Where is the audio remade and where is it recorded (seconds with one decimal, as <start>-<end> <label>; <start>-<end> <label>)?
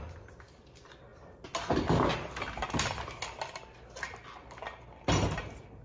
0.0-5.8 recorded